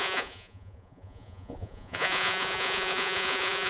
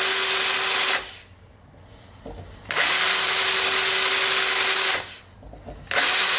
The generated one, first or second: first